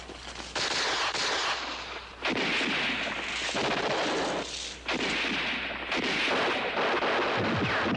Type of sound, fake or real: real